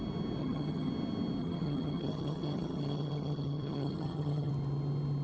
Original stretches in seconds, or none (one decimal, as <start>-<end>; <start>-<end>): 0.0-0.4; 0.9-1.4; 4.5-5.2